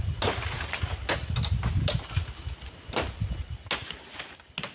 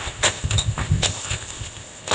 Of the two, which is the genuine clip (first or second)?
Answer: first